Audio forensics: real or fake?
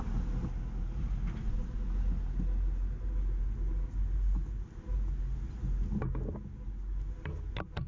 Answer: real